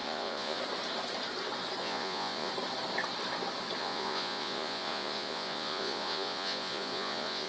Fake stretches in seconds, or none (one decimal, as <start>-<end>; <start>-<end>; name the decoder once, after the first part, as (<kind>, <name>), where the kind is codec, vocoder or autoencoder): 0.0-0.6 (vocoder, Vocos); 1.8-2.5; 3.8-7.5